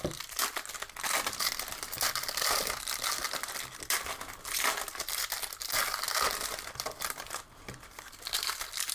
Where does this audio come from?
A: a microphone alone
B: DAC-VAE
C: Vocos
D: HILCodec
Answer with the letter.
A